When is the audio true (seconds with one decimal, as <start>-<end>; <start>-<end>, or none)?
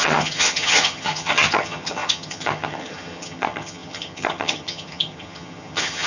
none